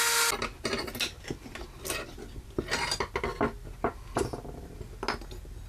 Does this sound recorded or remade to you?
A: recorded